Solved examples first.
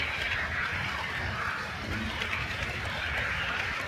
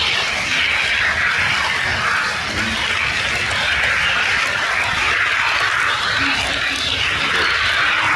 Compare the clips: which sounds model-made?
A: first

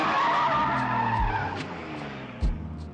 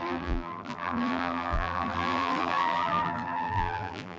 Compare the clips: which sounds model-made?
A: second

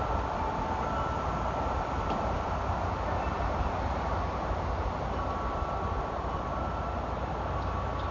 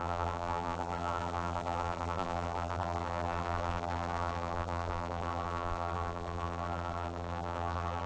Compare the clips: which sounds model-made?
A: second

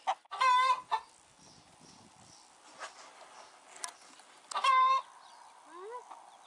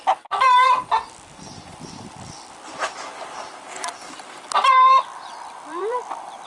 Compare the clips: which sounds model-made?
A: second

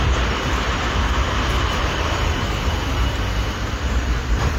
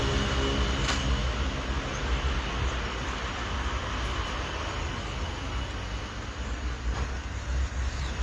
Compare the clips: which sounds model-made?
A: first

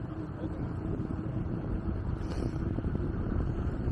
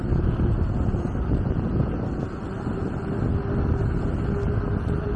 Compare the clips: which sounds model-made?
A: first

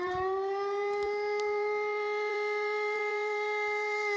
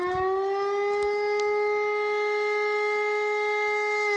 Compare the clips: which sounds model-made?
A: first